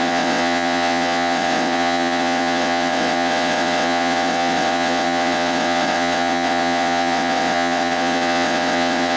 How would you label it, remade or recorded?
remade